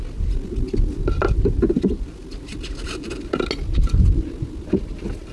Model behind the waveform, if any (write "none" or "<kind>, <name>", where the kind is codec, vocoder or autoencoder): none